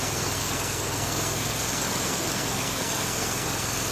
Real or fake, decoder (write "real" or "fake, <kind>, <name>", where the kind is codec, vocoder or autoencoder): fake, codec, SNAC